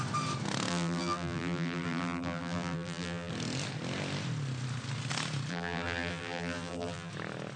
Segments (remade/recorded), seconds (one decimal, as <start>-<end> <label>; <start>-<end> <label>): 0.0-0.7 recorded; 0.7-3.3 remade; 3.3-5.5 recorded; 5.5-7.1 remade; 7.1-7.6 recorded